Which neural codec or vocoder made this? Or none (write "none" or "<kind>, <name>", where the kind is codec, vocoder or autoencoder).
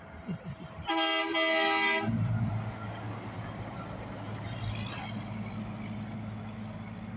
none